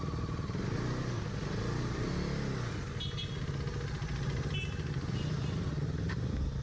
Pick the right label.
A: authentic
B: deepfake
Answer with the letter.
A